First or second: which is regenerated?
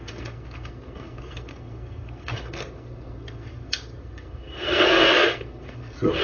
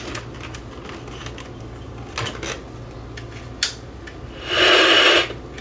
first